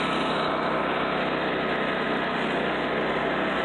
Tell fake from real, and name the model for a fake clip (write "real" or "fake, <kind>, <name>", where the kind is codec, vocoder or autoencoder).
real